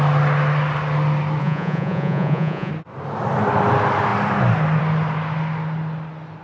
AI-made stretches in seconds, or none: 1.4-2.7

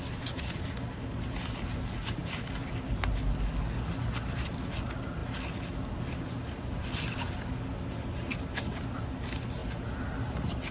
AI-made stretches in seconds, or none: none

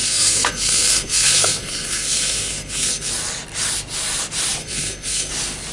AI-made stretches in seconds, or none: 0.0-3.1; 4.6-5.3

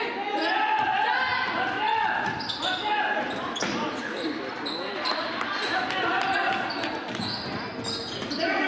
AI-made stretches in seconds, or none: none